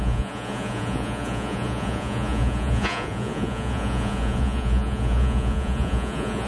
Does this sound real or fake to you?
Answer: fake